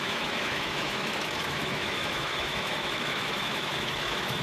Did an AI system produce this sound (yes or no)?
yes